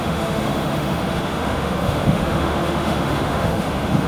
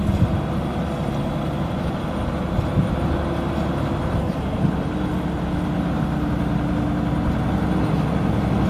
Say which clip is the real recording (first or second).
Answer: second